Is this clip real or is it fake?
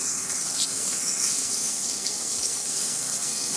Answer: fake